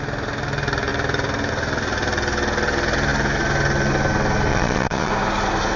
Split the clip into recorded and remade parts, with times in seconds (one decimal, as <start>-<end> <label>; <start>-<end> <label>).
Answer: 0.0-4.5 recorded; 4.5-5.1 remade; 5.1-5.8 recorded